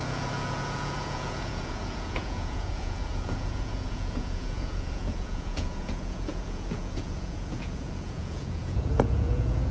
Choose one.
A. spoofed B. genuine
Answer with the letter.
A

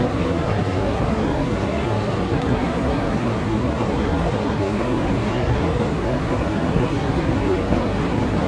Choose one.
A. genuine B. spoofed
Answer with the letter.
B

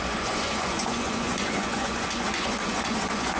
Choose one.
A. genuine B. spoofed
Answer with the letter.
B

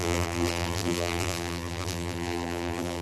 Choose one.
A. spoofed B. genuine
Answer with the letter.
A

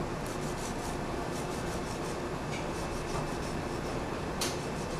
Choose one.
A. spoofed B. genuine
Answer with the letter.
B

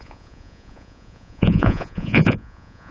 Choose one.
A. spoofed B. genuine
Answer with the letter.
A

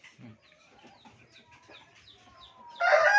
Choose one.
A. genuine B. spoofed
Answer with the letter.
A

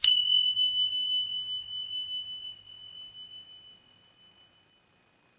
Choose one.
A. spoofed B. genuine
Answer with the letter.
B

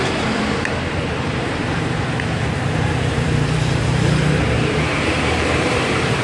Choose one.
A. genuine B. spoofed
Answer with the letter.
B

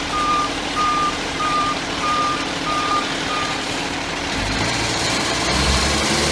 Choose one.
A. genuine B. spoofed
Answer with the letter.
B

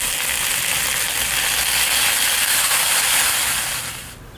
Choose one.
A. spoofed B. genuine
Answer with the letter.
B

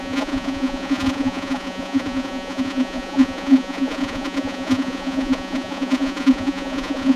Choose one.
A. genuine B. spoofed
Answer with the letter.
B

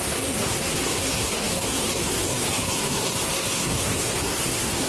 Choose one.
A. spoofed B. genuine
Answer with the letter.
A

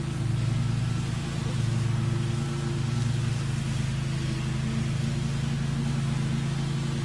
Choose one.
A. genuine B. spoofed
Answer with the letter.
A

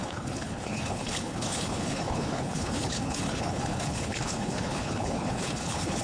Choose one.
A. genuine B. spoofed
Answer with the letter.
B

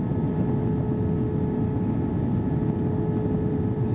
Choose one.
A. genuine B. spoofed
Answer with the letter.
A